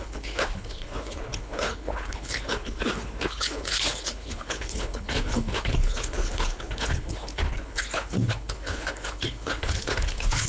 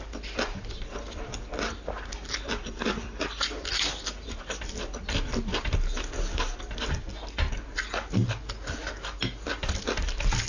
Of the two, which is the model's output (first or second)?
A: first